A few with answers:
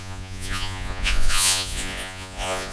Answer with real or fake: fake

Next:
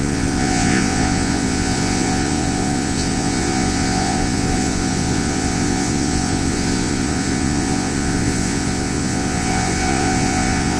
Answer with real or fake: fake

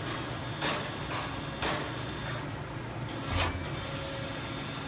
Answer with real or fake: real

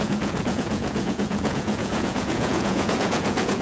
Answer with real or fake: fake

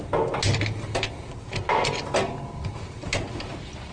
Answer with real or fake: real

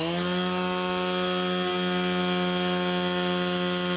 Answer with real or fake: real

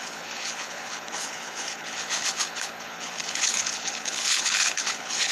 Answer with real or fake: fake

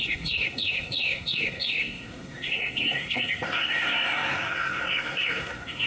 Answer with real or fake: fake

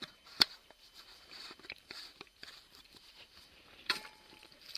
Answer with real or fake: fake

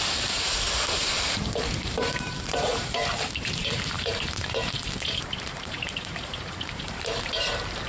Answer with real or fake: fake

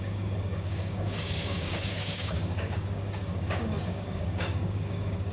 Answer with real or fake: fake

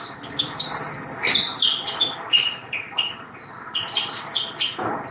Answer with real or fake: real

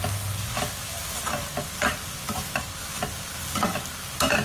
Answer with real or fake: real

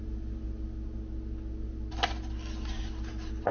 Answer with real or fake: real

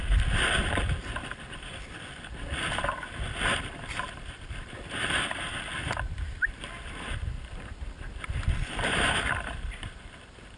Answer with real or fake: fake